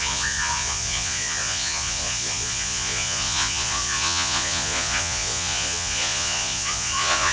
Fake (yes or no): yes